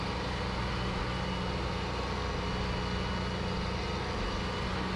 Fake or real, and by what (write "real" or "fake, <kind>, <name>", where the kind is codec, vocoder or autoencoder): real